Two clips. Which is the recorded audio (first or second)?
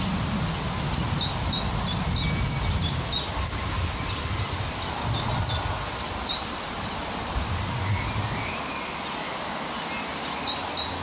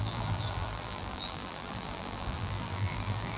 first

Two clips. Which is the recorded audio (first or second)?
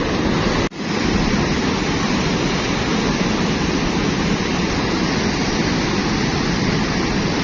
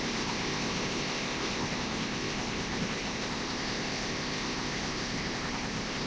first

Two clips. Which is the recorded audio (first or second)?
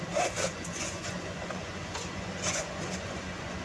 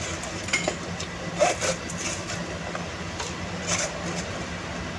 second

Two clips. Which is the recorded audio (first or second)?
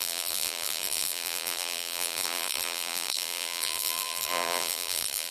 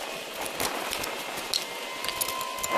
second